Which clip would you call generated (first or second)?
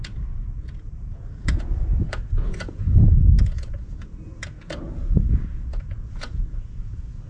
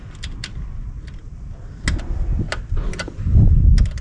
first